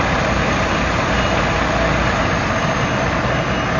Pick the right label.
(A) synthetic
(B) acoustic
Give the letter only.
B